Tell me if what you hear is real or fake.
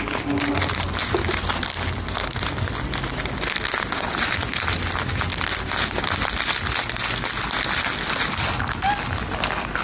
real